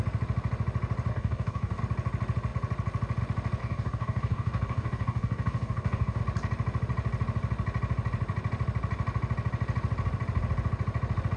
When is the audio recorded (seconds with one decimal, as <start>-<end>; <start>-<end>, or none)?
0.0-1.1; 1.8-3.6; 6.2-11.4